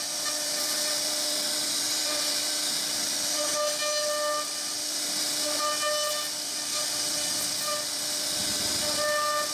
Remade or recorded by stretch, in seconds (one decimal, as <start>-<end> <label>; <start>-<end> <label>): 0.0-9.5 recorded